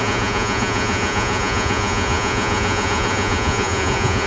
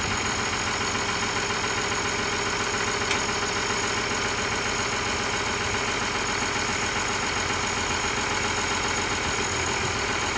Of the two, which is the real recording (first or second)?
second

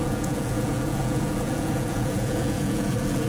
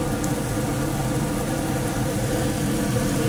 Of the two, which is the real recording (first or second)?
second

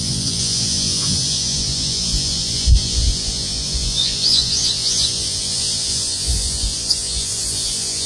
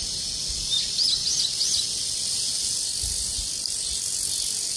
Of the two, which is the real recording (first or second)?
second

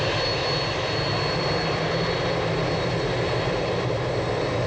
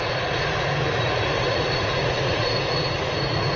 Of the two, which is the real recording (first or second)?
first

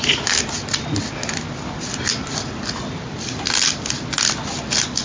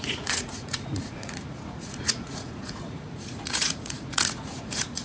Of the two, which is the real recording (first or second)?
first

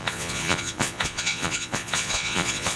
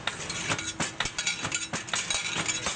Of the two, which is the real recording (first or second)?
second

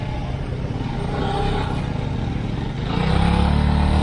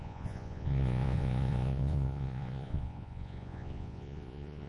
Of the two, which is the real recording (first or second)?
first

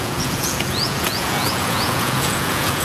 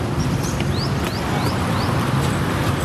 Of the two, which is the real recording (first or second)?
second